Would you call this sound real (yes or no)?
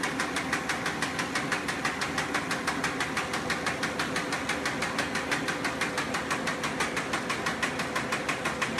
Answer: yes